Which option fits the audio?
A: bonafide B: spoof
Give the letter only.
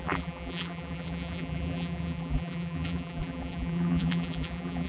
B